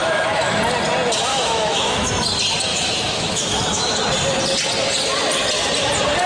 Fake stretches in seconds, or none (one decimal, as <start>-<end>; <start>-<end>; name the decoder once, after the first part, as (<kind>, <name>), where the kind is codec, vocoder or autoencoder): 0.0-0.6 (autoencoder, DAC-VAE); 1.3-2.1; 2.7-3.9